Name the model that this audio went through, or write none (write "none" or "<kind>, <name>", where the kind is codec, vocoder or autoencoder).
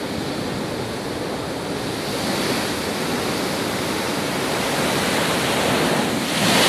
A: none